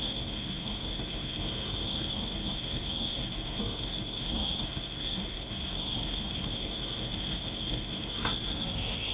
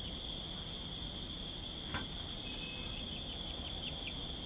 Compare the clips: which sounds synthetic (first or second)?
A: first